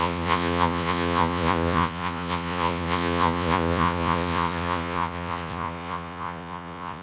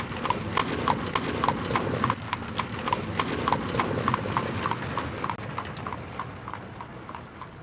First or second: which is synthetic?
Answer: first